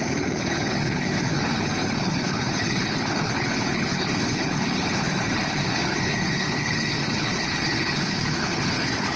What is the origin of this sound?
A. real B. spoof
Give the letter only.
B